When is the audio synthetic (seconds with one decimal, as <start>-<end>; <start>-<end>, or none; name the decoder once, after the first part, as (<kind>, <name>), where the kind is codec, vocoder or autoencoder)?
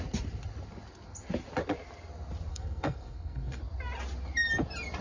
2.5-3.6 (codec, SNAC)